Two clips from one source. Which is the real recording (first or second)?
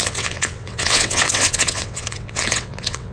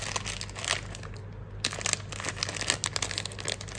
second